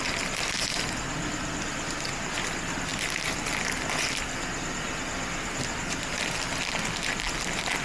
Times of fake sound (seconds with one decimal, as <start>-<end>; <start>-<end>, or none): none